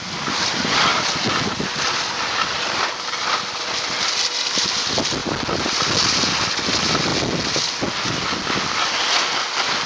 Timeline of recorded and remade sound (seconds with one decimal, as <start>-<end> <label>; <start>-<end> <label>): 0.0-9.9 recorded